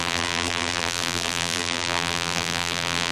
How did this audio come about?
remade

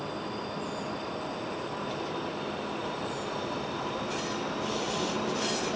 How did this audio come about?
recorded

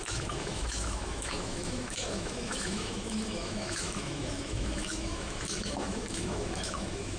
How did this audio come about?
remade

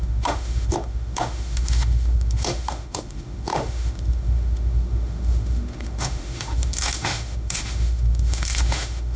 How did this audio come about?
remade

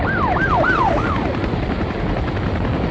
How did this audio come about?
recorded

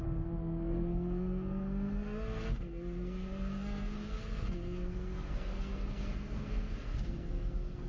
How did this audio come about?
remade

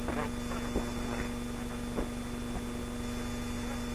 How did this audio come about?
recorded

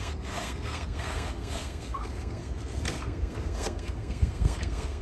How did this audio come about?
remade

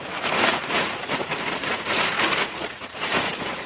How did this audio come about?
remade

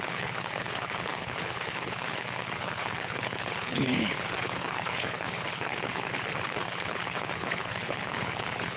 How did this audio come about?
remade